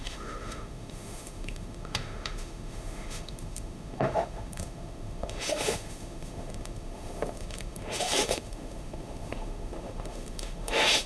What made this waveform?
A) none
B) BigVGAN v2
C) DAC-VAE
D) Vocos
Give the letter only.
C